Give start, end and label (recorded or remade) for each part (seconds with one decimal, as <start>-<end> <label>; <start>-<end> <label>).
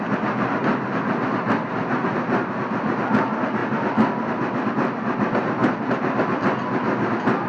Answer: 0.0-7.5 recorded